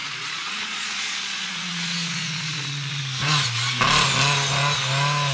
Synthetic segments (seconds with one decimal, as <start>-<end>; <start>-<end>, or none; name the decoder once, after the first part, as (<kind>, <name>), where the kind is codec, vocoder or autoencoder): 0.0-3.0 (vocoder, Vocos)